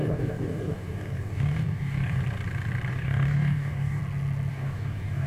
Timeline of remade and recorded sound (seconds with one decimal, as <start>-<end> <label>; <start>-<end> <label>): 0.0-2.2 remade; 2.2-2.9 recorded; 2.9-4.0 remade; 4.0-4.5 recorded; 4.5-5.3 remade